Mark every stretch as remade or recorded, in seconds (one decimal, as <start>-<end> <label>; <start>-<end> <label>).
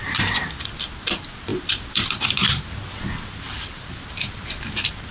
0.0-5.1 remade